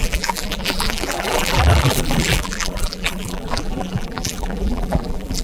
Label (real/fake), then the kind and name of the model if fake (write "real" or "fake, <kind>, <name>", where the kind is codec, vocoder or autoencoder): fake, vocoder, BigVGAN v2